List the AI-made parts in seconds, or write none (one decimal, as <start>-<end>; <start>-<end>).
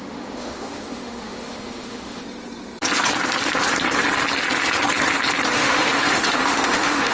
0.0-2.2; 5.5-7.1